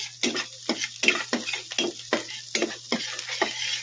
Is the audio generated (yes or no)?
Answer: no